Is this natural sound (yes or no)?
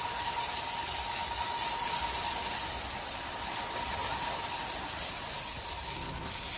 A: yes